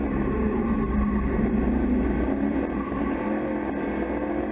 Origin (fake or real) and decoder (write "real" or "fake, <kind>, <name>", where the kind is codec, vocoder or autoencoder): real